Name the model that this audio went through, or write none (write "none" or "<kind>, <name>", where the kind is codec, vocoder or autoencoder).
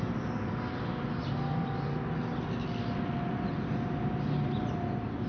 none